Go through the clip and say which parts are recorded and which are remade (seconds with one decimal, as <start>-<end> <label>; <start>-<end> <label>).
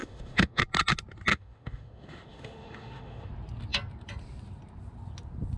0.0-0.6 remade; 0.6-1.3 recorded; 1.3-3.3 remade; 3.3-5.6 recorded